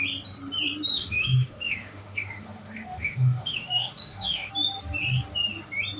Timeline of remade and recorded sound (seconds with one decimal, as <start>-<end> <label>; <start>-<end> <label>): 0.0-0.9 recorded; 0.9-4.5 remade; 4.5-6.0 recorded